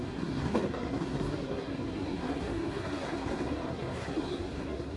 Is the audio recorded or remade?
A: remade